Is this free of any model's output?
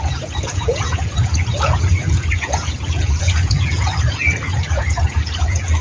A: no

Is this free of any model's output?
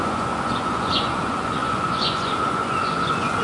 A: no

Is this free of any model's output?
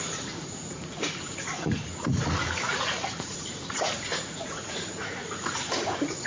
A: no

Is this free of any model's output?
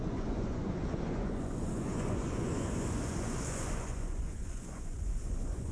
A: no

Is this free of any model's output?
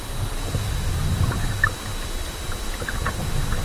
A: yes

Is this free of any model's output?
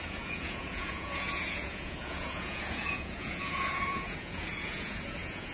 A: no